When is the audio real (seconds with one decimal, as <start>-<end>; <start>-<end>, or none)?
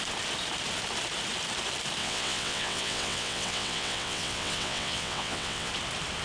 0.0-2.0; 5.7-6.2